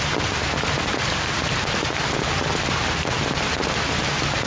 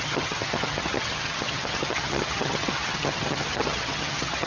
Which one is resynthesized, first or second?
second